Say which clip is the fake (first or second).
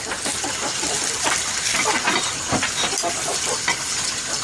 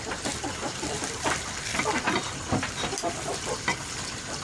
second